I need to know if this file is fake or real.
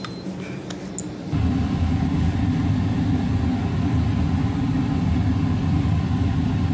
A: real